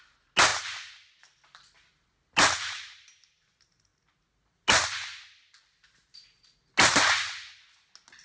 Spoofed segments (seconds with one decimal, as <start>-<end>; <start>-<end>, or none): none